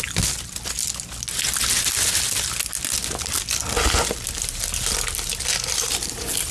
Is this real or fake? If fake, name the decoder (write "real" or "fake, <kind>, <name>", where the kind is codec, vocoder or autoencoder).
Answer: real